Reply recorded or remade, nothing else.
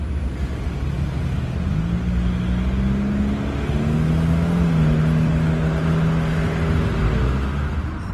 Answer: recorded